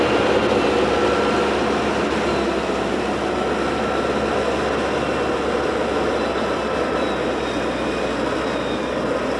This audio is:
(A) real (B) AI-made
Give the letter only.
A